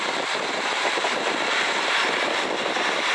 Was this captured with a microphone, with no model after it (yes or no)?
no